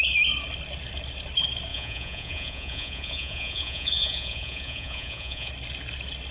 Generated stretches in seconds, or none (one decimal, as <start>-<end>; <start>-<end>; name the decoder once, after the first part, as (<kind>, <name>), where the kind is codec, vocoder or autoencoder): 1.7-5.5 (vocoder, Vocos)